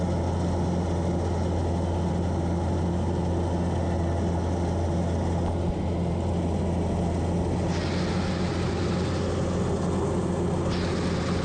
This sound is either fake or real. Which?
real